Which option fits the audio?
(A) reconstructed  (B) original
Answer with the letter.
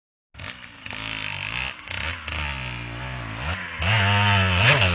B